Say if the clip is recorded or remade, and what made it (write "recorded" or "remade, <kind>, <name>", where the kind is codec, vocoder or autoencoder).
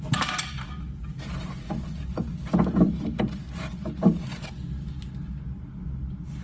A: recorded